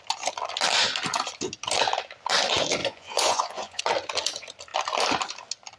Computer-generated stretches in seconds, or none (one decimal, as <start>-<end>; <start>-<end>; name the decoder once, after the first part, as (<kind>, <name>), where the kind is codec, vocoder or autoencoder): 2.8-3.8 (vocoder, Vocos)